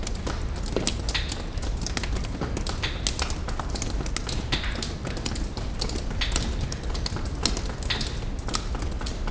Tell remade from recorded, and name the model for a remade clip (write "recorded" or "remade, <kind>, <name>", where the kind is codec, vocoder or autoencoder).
recorded